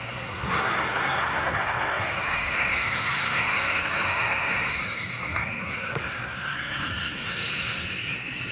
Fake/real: fake